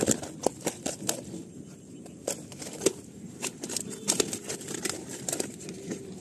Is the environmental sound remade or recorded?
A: remade